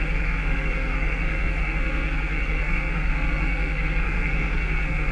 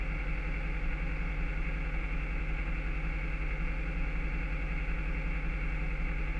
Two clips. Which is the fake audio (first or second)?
first